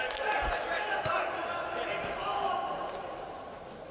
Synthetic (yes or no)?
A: no